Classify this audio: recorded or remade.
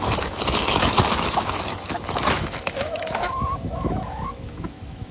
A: remade